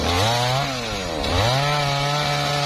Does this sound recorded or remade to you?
recorded